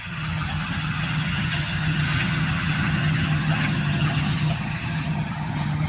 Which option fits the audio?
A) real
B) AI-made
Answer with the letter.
B